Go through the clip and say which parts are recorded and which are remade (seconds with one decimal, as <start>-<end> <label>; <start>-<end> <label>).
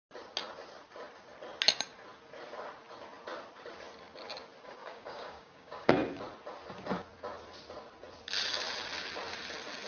0.0-4.8 recorded; 4.8-5.9 remade; 5.9-9.9 recorded